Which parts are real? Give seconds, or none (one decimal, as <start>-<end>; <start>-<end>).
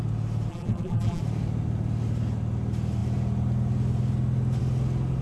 0.0-0.5; 1.2-5.2